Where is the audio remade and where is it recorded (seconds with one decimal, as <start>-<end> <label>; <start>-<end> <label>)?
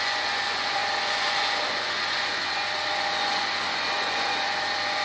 0.0-5.0 remade